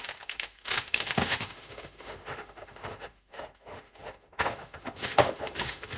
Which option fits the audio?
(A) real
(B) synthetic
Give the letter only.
B